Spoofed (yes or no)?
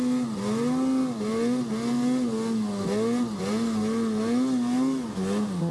no